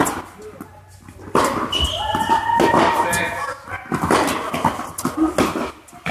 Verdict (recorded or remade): recorded